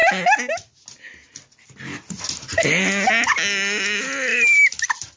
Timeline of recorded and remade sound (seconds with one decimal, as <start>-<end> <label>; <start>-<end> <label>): 0.0-4.3 recorded; 4.3-5.2 remade